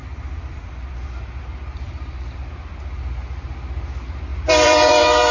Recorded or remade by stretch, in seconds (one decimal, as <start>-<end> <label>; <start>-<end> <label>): 0.0-2.5 remade; 2.5-4.3 recorded; 4.3-5.3 remade